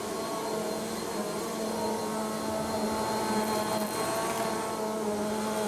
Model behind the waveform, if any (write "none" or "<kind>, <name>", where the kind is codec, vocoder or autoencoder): none